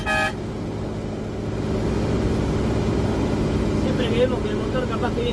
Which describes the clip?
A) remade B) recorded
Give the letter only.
B